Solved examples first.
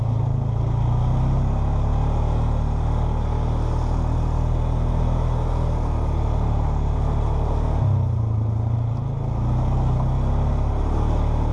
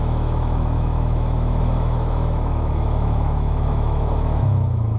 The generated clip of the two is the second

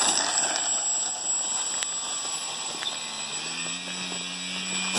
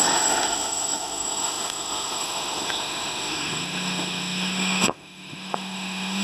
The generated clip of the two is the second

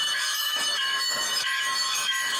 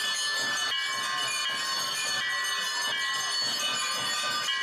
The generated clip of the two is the first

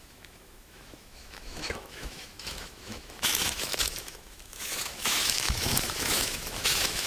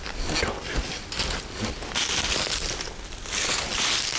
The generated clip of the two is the first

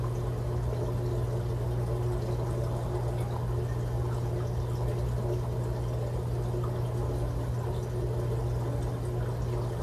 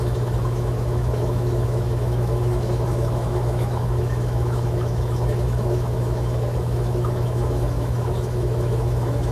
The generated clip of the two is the second